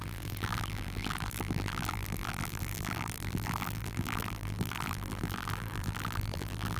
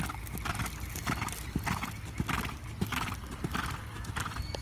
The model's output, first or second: first